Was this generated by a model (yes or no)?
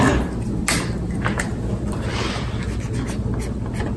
no